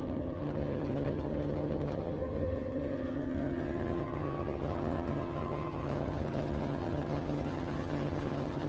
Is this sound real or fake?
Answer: fake